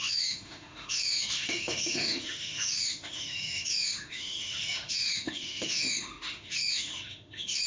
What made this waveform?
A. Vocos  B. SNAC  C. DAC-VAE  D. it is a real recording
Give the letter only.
C